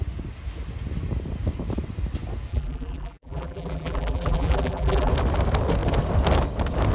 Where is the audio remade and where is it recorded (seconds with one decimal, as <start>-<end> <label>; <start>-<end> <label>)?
0.0-2.5 recorded; 2.5-5.1 remade; 5.1-6.9 recorded